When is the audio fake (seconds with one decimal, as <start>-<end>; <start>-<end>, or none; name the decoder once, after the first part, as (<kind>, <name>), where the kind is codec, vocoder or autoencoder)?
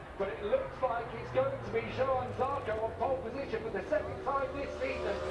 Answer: none